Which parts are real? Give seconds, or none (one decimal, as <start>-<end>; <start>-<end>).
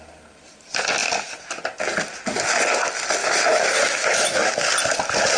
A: 0.0-3.2; 4.5-5.4